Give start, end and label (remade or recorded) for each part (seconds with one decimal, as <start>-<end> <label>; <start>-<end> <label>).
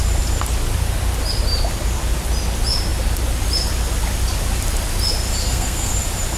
0.0-5.4 recorded; 5.4-5.9 remade; 5.9-6.4 recorded